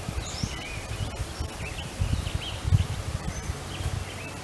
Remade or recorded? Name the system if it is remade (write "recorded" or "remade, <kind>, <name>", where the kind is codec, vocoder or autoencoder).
recorded